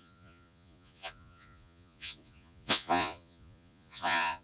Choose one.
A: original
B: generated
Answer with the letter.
B